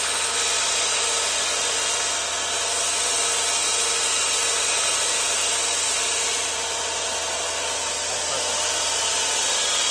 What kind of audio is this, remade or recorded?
recorded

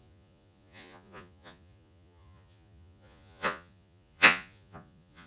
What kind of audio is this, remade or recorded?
remade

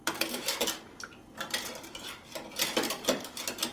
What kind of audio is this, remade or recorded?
recorded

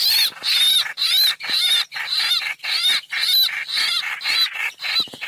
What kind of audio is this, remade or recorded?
recorded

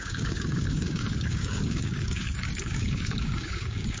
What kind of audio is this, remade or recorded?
remade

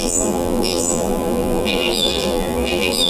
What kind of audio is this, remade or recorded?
remade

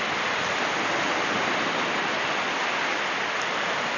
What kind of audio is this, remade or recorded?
recorded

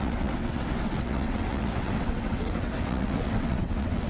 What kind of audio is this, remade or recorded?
remade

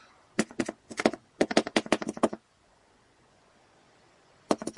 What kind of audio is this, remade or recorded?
remade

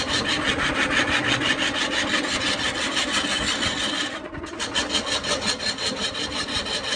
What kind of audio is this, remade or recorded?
recorded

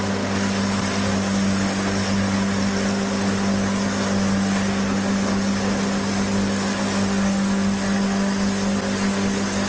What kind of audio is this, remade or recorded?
recorded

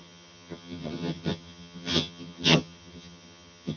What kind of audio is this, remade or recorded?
remade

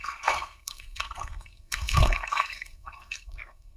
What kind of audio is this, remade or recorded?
remade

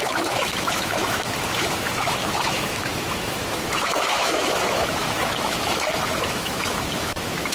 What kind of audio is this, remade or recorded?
remade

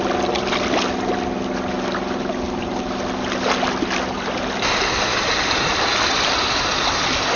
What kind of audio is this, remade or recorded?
recorded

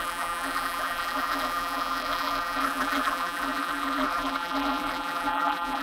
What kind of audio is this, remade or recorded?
remade